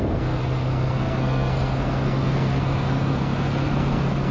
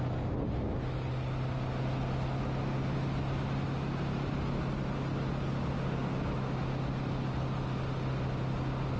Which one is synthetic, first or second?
first